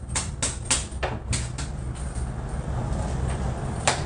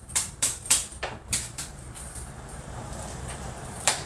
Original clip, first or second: first